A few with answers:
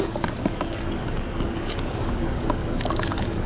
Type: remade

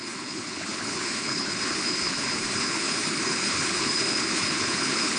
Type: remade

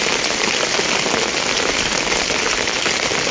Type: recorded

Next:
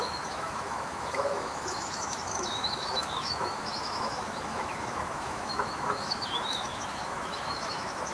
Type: remade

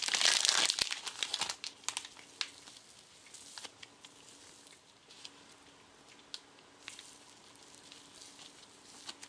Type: recorded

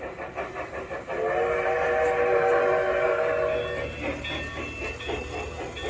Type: recorded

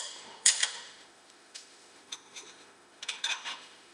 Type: remade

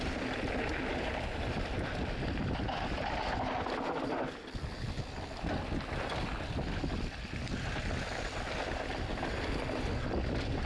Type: recorded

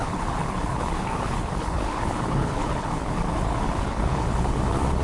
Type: remade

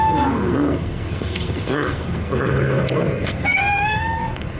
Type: remade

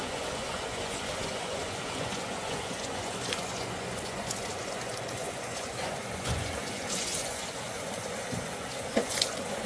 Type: remade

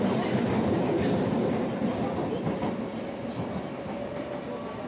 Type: recorded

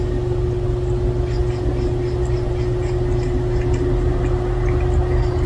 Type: recorded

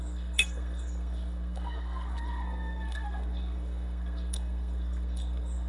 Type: remade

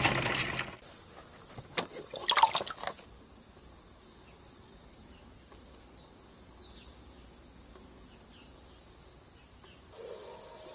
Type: recorded